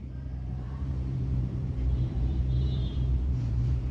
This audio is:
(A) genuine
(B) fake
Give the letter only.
B